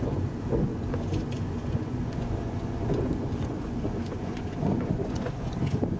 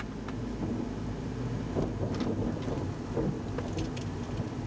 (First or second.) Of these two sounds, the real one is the second